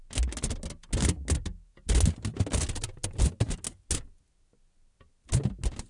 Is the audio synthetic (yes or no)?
no